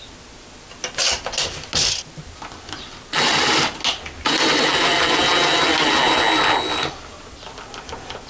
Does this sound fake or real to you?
real